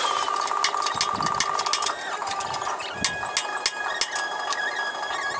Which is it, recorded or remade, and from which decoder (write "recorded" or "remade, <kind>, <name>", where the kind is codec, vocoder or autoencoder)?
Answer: recorded